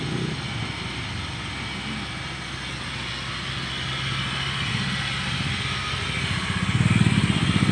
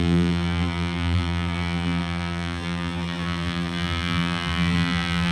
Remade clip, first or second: second